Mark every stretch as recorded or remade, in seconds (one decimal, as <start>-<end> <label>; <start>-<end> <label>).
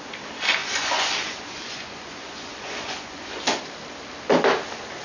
0.0-0.6 recorded; 0.6-3.6 remade; 3.6-5.0 recorded